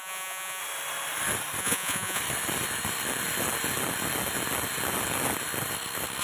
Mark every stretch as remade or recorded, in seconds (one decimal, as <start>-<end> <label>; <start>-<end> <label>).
0.0-0.6 remade; 0.6-1.6 recorded; 1.6-2.2 remade; 2.2-6.2 recorded